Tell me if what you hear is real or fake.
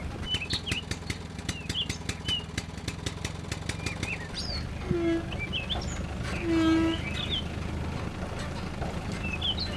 real